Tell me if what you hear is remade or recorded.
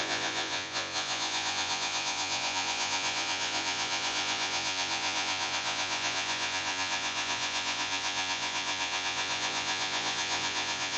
remade